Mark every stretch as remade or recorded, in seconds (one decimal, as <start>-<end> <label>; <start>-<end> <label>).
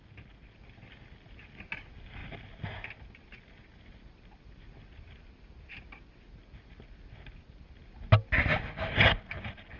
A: 0.0-9.8 recorded